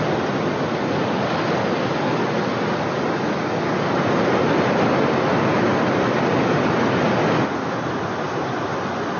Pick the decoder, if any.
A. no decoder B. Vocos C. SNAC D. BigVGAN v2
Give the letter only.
A